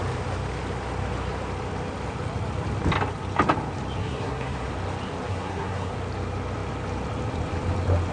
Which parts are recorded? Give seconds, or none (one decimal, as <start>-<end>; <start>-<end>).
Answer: 0.0-4.0; 4.7-5.3; 5.9-8.1